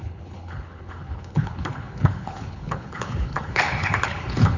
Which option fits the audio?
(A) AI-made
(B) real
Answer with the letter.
A